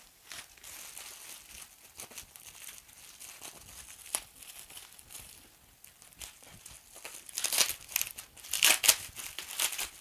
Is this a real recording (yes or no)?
yes